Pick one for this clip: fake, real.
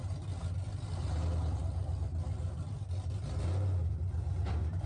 real